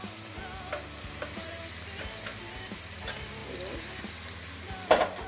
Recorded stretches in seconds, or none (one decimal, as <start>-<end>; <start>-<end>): 0.0-5.3